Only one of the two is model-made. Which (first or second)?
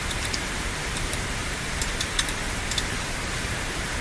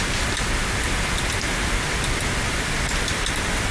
first